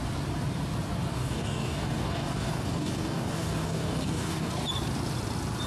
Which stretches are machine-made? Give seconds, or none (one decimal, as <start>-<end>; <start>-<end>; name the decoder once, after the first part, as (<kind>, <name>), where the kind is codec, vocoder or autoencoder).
1.1-4.5 (codec, DAC)